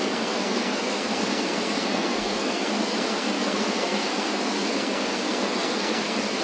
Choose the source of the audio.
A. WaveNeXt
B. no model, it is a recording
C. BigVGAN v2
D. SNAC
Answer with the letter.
D